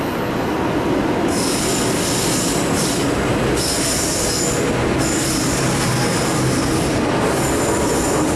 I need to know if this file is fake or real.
real